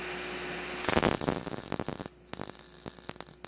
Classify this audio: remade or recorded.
recorded